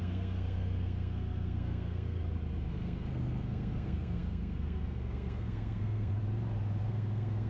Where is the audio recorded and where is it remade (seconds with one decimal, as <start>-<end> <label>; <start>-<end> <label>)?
0.0-2.2 remade; 2.2-2.7 recorded; 2.7-6.2 remade; 6.2-6.8 recorded; 6.8-7.5 remade